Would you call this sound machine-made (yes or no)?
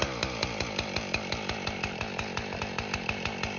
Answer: no